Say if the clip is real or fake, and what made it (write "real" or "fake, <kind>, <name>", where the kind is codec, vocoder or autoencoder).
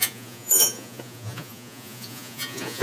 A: fake, vocoder, Vocos